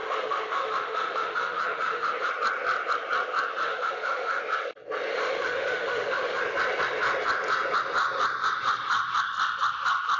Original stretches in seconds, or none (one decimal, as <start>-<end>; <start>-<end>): 2.3-3.6; 4.4-5.1; 6.4-10.2